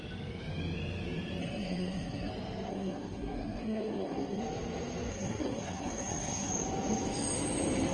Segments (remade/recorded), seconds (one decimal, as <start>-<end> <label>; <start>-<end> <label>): 0.0-1.4 recorded; 1.4-2.3 remade; 2.3-2.7 recorded; 2.7-4.4 remade; 4.4-5.1 recorded; 5.1-6.5 remade; 6.5-7.9 recorded